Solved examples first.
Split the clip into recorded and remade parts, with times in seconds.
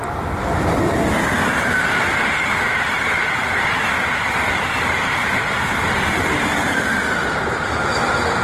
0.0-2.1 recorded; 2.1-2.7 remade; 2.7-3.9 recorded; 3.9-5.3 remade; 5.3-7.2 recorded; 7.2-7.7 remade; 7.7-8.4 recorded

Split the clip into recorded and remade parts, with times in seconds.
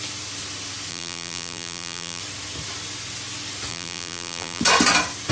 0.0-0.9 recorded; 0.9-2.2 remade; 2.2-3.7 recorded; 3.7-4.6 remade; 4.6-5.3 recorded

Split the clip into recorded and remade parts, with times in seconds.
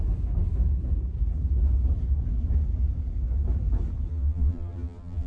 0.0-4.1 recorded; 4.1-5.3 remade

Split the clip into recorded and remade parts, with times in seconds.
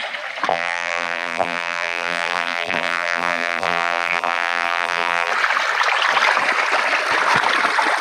0.0-0.5 recorded; 0.5-5.3 remade; 5.3-8.0 recorded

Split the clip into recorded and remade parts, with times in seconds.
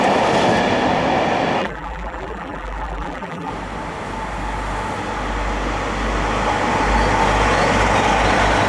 0.0-1.6 recorded; 1.6-3.5 remade; 3.5-8.7 recorded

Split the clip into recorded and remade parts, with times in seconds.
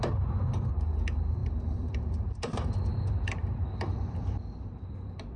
0.0-1.4 recorded; 1.4-4.6 remade; 4.6-5.4 recorded